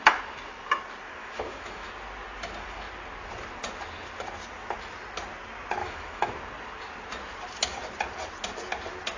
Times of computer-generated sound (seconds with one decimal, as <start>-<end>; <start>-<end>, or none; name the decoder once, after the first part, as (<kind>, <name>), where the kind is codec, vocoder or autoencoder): 1.2-1.9 (autoencoder, DAC-VAE); 5.8-6.3